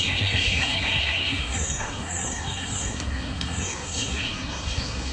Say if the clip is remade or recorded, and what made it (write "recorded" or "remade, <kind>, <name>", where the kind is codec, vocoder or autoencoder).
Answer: remade, codec, SNAC